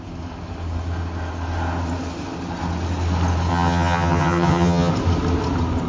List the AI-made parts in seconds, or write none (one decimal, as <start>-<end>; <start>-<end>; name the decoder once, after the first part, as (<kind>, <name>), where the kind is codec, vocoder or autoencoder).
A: 3.5-4.9 (vocoder, HiFi-GAN)